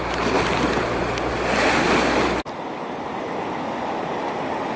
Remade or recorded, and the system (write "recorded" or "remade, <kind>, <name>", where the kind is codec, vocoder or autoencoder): recorded